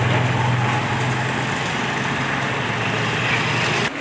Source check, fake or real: real